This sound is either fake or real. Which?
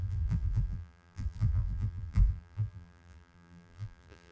fake